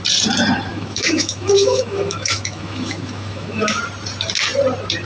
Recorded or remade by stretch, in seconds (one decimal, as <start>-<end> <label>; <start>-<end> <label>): 0.0-0.7 recorded; 0.7-3.8 remade; 3.8-5.1 recorded